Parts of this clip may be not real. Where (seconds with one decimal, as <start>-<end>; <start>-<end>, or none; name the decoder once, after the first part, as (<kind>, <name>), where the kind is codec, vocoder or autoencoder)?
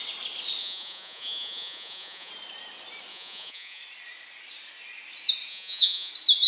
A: 0.6-2.3 (vocoder, Vocos); 3.1-3.8; 5.5-6.1